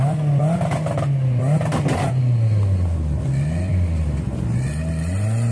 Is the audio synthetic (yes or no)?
no